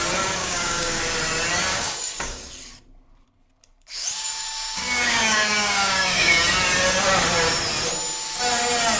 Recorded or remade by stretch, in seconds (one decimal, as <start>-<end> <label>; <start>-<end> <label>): 0.0-0.4 recorded; 0.4-1.0 remade; 1.0-1.7 recorded; 1.7-2.5 remade; 2.5-4.0 recorded; 4.0-6.4 remade; 6.4-9.0 recorded